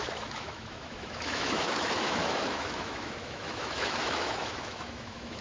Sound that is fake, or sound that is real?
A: fake